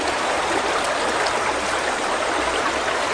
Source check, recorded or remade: recorded